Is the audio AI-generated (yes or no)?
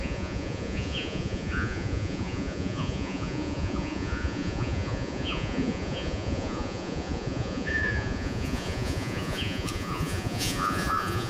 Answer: yes